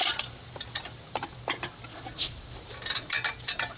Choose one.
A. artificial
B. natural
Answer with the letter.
A